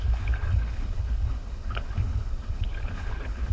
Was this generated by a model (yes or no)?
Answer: yes